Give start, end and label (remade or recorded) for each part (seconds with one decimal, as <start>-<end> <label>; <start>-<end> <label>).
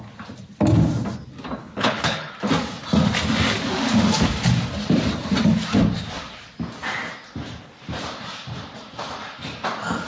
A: 0.0-1.6 recorded; 1.6-2.3 remade; 2.3-10.1 recorded